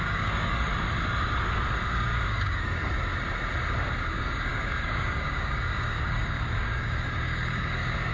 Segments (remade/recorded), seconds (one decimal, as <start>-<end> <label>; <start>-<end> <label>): 0.0-0.7 remade; 0.7-1.9 recorded; 1.9-3.1 remade; 3.1-4.0 recorded; 4.0-8.1 remade